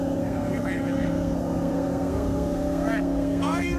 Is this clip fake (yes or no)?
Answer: yes